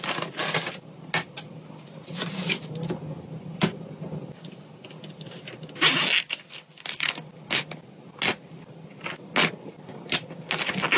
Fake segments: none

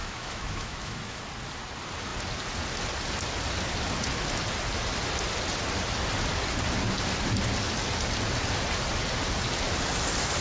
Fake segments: 0.0-1.2 (autoencoder, DAC-VAE)

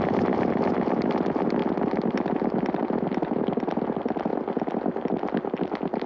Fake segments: none

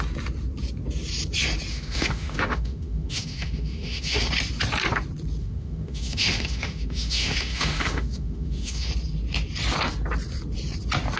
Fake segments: 1.7-4.3 (autoencoder, DAC-VAE); 5.4-8.9

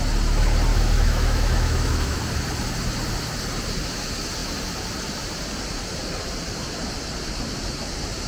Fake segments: 0.7-2.2 (autoencoder, DAC-VAE)

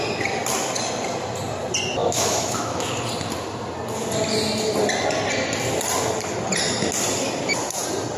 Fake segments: 2.0-2.9 (autoencoder, DAC-VAE)

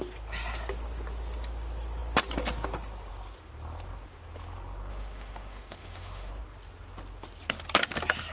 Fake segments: 4.9-6.3 (autoencoder, DAC-VAE)